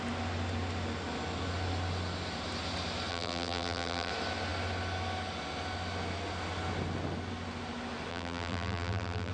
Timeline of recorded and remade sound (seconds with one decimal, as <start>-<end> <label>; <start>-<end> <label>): 0.0-3.1 recorded; 3.1-4.1 remade; 4.1-8.1 recorded; 8.1-9.3 remade